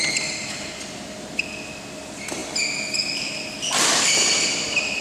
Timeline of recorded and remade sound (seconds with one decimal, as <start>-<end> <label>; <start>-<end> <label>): 0.0-5.0 recorded